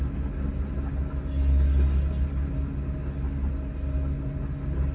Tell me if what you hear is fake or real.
real